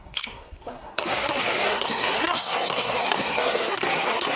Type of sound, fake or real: fake